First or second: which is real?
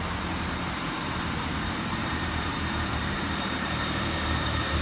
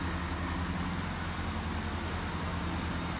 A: second